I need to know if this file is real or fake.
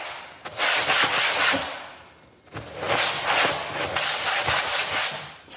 real